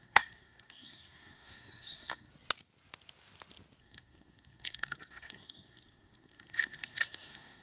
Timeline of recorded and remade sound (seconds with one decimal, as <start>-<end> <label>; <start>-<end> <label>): 0.0-2.3 remade; 2.3-3.8 recorded; 3.8-7.6 remade